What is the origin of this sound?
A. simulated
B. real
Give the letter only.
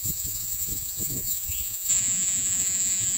A